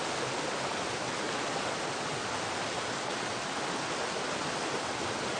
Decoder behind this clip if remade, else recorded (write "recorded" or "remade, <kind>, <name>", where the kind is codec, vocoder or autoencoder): recorded